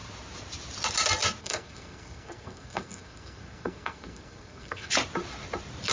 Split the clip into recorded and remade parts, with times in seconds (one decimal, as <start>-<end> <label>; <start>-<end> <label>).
0.0-1.4 recorded; 1.4-4.9 remade; 4.9-5.9 recorded